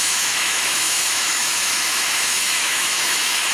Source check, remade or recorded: remade